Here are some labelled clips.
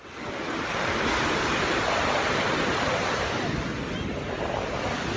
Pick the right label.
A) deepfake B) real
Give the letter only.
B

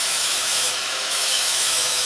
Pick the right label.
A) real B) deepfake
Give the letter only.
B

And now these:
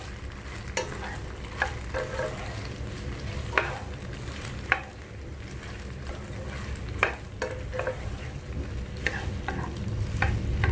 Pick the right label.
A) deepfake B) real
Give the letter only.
B